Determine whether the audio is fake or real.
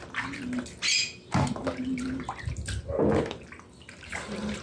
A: real